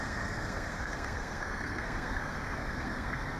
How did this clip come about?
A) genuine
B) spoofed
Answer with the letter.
B